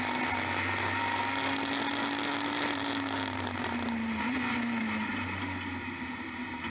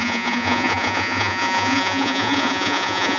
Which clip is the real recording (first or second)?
first